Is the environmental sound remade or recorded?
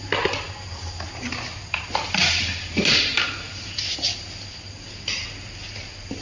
recorded